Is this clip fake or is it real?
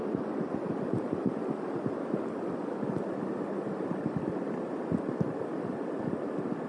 real